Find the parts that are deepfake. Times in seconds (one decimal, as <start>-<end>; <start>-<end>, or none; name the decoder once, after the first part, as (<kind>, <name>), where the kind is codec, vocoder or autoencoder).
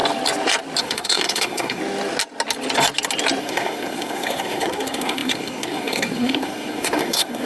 0.8-1.8 (codec, SNAC); 3.4-7.5